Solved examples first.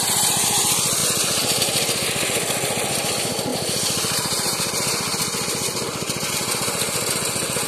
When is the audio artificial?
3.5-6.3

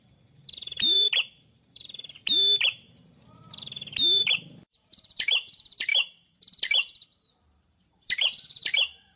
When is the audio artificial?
0.0-9.2

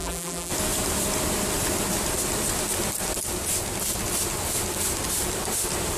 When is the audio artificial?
0.0-0.5